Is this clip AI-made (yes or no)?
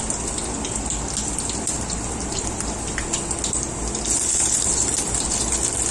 no